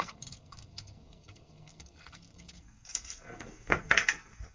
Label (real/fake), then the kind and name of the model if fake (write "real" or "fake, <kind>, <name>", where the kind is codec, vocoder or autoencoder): fake, codec, SNAC